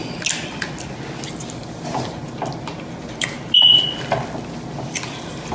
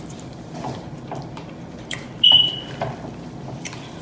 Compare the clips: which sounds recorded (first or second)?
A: first